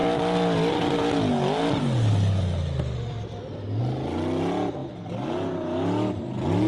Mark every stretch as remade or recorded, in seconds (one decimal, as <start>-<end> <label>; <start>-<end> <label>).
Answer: 0.0-6.7 recorded